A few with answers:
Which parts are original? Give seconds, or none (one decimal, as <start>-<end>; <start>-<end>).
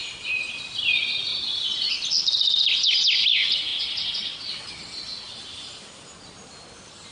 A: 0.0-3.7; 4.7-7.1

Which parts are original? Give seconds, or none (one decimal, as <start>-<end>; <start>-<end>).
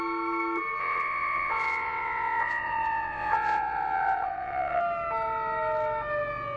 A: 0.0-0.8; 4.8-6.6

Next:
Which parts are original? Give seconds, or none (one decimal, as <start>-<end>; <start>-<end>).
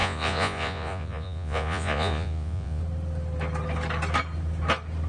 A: 2.8-5.1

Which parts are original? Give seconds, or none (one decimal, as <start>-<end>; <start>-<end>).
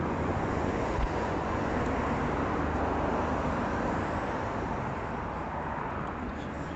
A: 1.7-5.8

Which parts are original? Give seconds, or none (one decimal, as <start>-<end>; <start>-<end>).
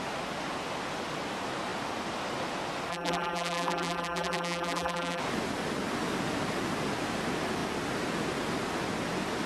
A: 0.0-2.9; 5.2-9.5